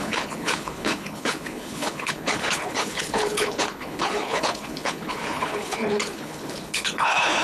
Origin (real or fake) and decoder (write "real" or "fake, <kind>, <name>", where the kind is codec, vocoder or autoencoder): fake, codec, HILCodec